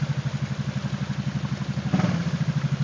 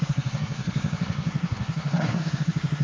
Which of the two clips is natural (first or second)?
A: first